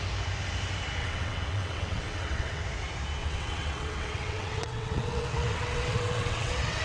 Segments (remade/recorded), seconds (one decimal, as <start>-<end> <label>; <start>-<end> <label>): 0.0-1.0 recorded; 1.0-2.6 remade; 2.6-3.2 recorded; 3.2-6.8 remade

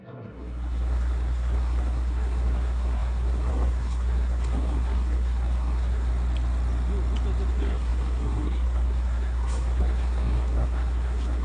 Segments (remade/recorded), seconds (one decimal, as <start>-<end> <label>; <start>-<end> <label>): 0.0-6.1 remade; 6.1-7.5 recorded; 7.5-11.4 remade

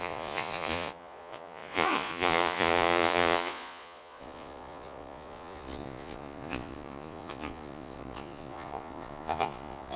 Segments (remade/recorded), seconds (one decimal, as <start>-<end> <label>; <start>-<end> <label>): 0.0-10.0 remade

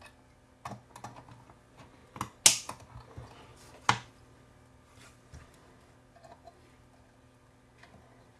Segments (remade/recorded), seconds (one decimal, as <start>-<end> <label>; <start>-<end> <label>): 0.0-8.4 recorded

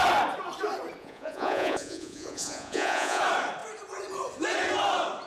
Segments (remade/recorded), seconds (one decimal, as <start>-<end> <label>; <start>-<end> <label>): 0.0-1.0 recorded; 1.0-3.2 remade; 3.2-5.3 recorded